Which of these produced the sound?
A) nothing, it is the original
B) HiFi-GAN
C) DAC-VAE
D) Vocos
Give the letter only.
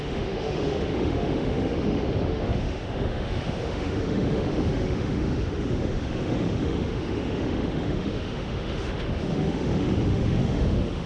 C